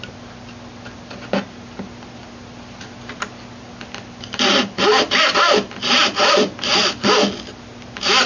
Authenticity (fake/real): real